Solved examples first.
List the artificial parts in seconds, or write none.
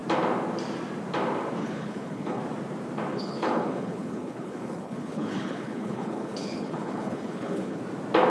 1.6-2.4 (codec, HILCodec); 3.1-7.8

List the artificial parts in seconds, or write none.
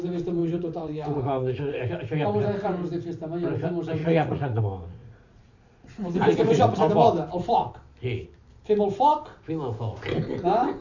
0.4-1.8 (vocoder, Vocos); 4.0-4.6; 5.0-6.9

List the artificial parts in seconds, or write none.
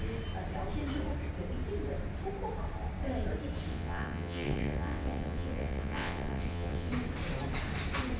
3.7-6.9 (vocoder, WaveNeXt)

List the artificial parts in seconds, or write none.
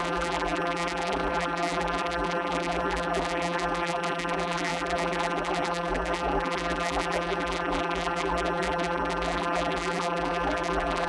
0.0-11.1 (vocoder, BigVGAN v2)